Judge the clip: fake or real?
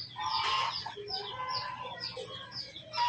real